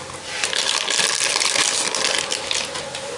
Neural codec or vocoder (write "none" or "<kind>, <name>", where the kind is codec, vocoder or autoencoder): none